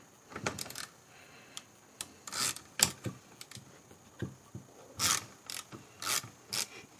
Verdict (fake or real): real